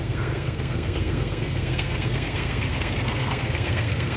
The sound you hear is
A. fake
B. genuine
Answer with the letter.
A